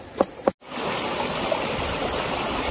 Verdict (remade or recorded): recorded